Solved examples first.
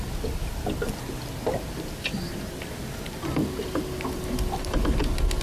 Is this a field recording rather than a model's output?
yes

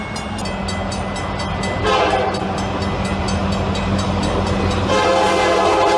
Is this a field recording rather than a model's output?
yes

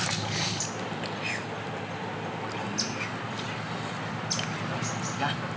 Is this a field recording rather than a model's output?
yes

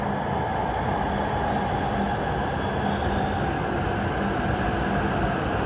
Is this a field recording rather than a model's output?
yes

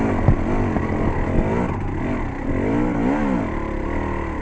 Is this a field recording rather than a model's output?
yes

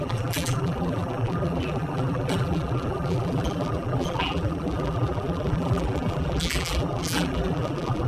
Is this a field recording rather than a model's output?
no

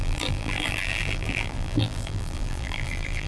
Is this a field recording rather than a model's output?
no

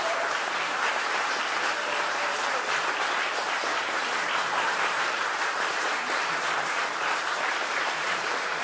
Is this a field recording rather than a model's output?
no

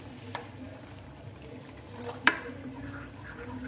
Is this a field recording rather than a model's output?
no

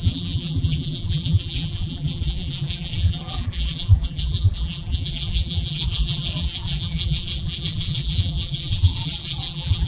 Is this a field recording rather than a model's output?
no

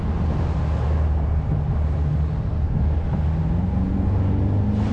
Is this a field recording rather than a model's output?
yes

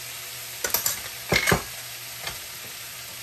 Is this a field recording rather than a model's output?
yes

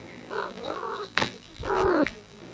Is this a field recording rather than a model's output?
no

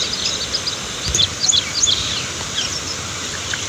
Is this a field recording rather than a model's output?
yes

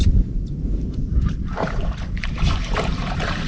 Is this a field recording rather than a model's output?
no